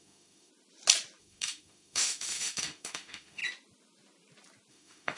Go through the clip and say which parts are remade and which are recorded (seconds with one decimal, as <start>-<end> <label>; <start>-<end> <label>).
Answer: 0.0-0.5 remade; 0.5-1.2 recorded; 1.2-3.4 remade; 3.4-4.7 recorded; 4.7-5.2 remade